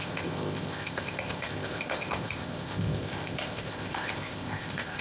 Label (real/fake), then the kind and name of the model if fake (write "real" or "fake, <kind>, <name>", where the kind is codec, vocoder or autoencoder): fake, codec, ZipCodec